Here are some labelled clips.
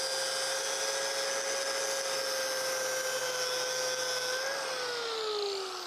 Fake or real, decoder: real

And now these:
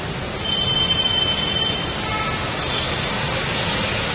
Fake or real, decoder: real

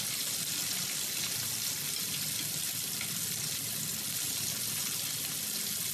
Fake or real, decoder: real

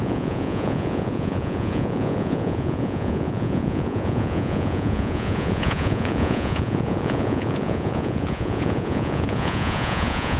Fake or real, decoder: fake, vocoder, Vocos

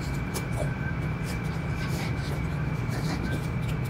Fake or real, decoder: fake, vocoder, BigVGAN v2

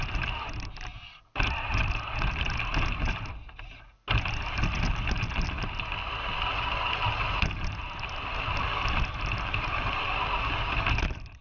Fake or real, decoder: real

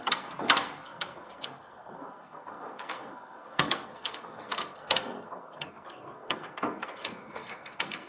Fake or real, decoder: fake, codec, SNAC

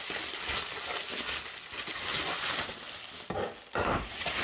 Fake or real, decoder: real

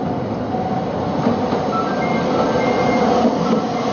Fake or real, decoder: real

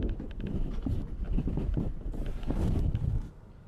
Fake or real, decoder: fake, vocoder, BigVGAN v2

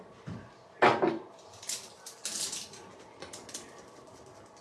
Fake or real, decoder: real